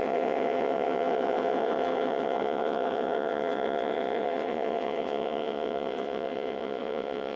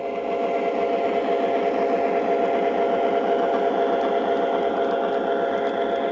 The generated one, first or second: first